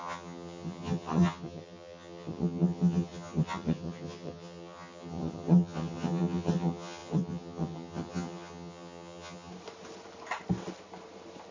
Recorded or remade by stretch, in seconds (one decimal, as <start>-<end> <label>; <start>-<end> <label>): 0.0-9.5 remade; 9.5-11.5 recorded